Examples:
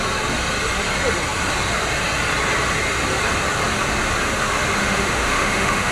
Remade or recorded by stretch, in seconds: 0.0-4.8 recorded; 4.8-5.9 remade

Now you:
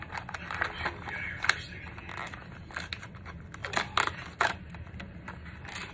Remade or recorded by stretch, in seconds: 0.0-5.9 recorded

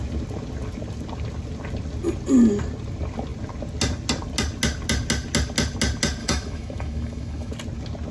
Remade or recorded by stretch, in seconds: 0.0-6.2 recorded; 6.2-7.5 remade; 7.5-8.1 recorded

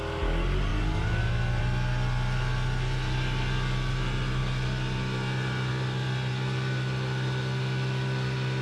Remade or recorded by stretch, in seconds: 0.0-8.6 recorded

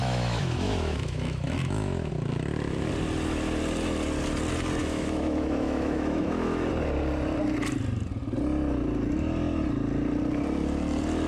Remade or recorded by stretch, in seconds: 0.0-2.1 remade; 2.1-4.8 recorded; 4.8-6.7 remade; 6.7-11.3 recorded

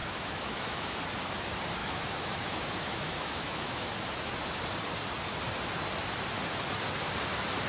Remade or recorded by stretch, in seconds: 0.0-1.0 remade; 1.0-1.8 recorded; 1.8-3.9 remade; 3.9-7.7 recorded

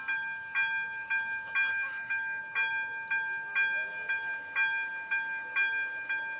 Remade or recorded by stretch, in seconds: 0.0-1.7 recorded; 1.7-2.4 remade; 2.4-6.4 recorded

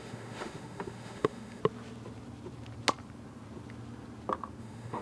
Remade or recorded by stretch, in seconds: 0.0-1.6 remade; 1.6-4.6 recorded; 4.6-5.0 remade